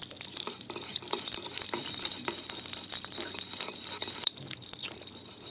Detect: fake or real fake